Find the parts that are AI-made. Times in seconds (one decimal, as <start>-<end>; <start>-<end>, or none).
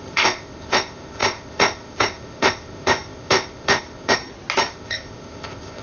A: 0.0-4.2; 4.7-5.8